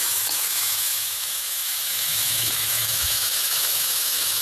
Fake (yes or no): yes